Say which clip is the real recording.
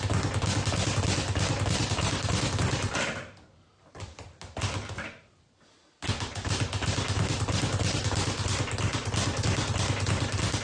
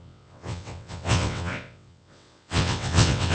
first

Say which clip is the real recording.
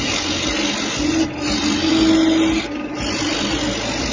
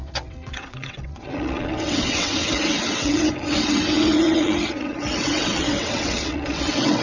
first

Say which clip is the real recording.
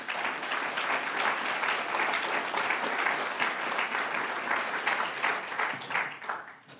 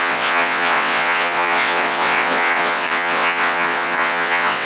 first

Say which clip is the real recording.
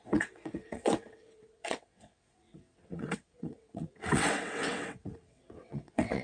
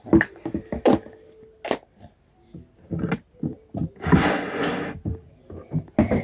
second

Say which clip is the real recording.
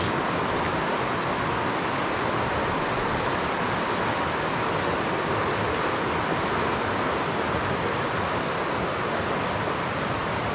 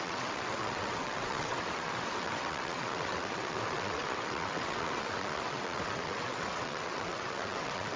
first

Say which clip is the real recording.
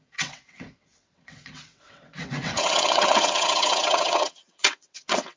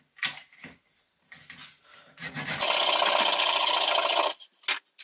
second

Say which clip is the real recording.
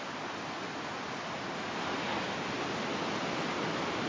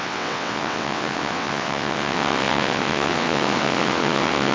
first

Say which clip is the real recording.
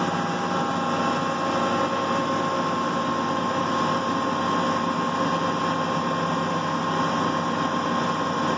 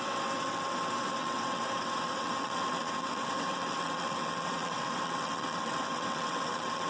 first